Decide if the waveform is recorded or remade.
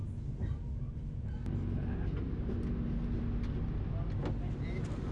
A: recorded